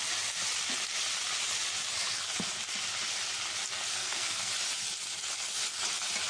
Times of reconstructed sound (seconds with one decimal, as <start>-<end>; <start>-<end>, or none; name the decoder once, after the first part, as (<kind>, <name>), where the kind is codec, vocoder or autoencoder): 3.9-4.5 (codec, SNAC)